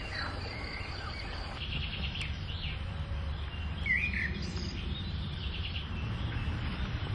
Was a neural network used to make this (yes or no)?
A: no